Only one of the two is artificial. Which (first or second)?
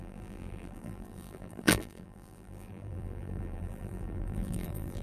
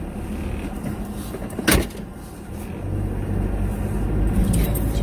first